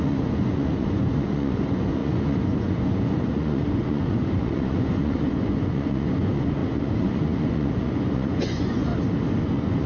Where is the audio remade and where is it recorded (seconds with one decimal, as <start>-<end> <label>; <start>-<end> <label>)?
0.0-8.9 remade; 8.9-9.5 recorded; 9.5-9.9 remade